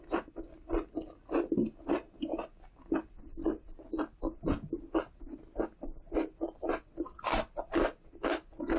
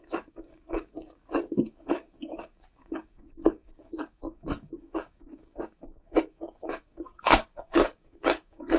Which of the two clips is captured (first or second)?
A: first